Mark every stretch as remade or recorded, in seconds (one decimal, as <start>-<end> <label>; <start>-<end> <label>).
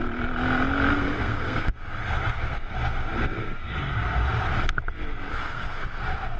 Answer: 0.0-0.9 recorded; 0.9-3.8 remade; 3.8-5.3 recorded; 5.3-6.0 remade; 6.0-6.4 recorded